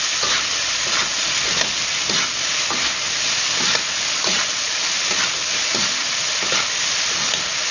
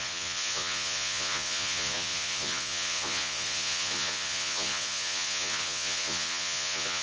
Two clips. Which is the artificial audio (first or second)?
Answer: second